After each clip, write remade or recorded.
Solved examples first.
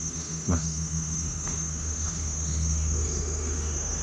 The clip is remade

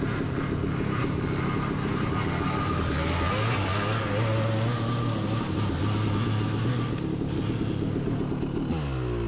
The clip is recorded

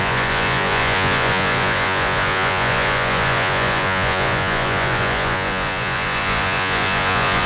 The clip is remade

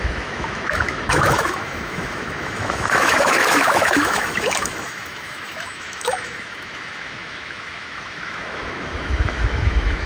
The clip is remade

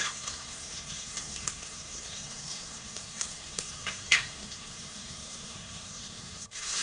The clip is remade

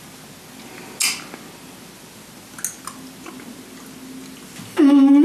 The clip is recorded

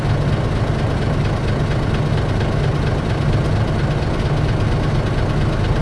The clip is recorded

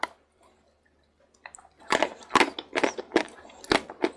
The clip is recorded